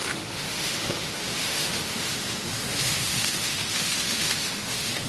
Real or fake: fake